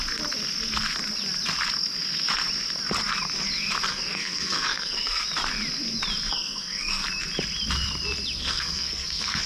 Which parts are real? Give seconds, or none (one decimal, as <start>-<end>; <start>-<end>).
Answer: 0.0-3.9; 5.2-6.3; 7.0-8.4